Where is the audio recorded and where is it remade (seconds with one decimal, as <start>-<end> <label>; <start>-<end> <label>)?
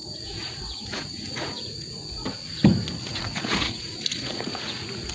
0.0-2.3 remade; 2.3-3.1 recorded; 3.1-5.1 remade